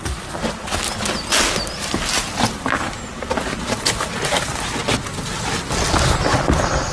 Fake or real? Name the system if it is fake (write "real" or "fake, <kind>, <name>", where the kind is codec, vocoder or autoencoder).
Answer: real